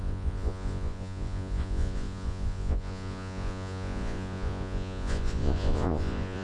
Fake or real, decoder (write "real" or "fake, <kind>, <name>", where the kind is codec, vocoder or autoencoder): fake, vocoder, Vocos